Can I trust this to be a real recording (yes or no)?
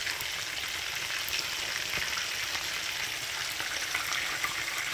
yes